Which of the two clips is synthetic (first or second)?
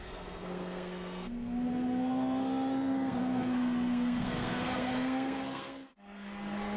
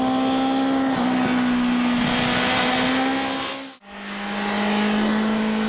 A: first